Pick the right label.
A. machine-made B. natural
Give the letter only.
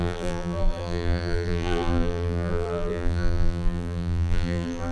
A